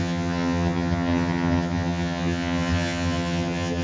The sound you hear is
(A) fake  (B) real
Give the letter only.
A